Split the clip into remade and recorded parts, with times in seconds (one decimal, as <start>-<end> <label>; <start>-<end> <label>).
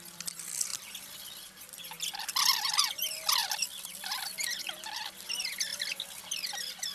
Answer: 0.0-3.4 recorded; 3.4-4.2 remade; 4.2-5.7 recorded; 5.7-6.2 remade; 6.2-6.9 recorded